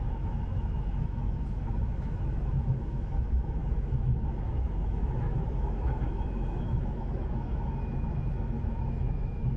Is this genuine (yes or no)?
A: no